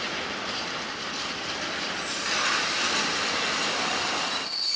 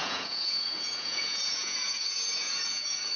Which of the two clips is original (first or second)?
first